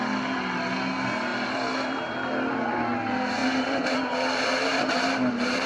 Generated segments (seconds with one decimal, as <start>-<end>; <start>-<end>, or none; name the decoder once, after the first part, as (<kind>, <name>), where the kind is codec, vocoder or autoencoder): 1.3-1.9 (vocoder, BigVGAN v2); 3.4-5.0